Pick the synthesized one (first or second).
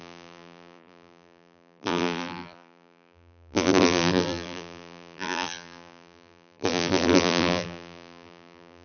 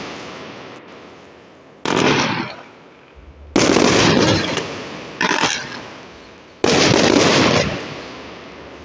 first